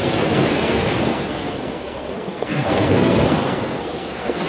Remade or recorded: remade